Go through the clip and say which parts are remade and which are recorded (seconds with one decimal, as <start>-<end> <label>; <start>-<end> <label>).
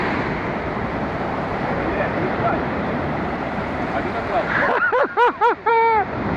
0.0-1.0 recorded; 1.0-5.0 remade; 5.0-5.7 recorded; 5.7-6.4 remade